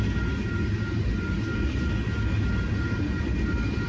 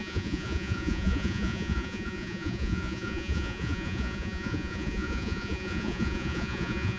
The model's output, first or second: second